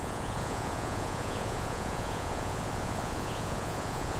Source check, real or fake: fake